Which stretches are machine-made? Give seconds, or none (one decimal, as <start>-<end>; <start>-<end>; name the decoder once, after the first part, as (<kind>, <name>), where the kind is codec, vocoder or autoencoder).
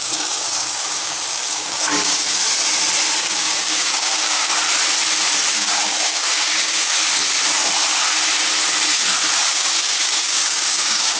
0.0-2.4 (codec, DAC); 3.2-4.5; 5.5-7.1; 9.5-11.2